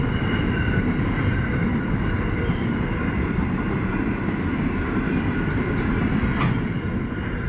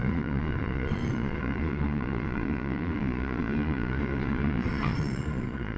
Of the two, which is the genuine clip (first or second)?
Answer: first